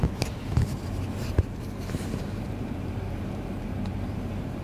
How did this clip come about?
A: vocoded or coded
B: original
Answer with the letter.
A